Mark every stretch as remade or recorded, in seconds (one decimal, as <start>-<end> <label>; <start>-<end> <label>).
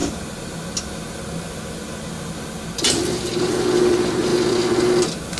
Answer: 0.0-5.4 recorded